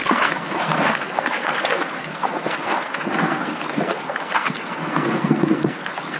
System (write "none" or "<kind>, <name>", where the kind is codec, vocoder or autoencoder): codec, SNAC